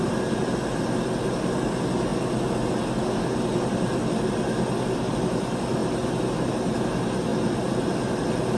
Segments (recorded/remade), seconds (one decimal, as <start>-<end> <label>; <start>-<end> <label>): 0.0-8.6 recorded